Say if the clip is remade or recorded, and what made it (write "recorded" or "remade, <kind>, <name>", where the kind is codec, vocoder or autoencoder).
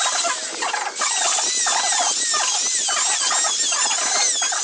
recorded